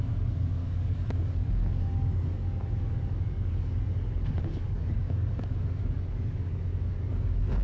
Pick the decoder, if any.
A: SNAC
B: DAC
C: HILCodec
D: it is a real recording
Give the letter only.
B